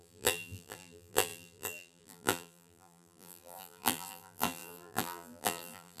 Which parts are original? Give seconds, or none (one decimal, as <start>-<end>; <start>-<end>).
none